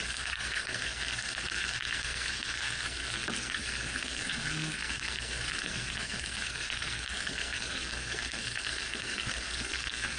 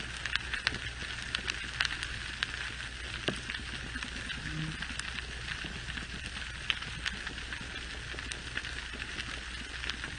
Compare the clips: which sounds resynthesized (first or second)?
first